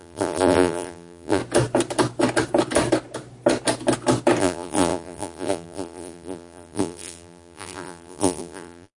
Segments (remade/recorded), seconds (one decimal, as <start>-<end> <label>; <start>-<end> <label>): 0.0-1.4 remade; 1.4-4.4 recorded; 4.4-9.0 remade